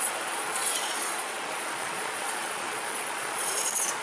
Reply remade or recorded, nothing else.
remade